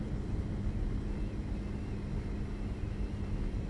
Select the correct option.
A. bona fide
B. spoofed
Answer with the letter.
A